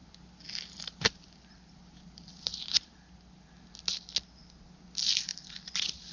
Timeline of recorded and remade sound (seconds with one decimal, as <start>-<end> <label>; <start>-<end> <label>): 0.0-3.7 remade; 3.7-5.3 recorded; 5.3-6.1 remade